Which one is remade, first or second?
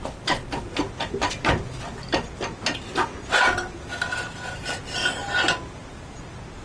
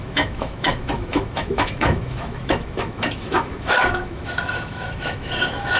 second